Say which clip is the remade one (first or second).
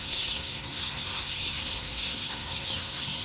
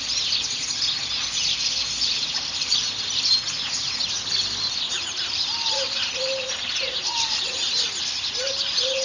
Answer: first